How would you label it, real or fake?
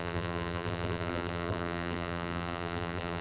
fake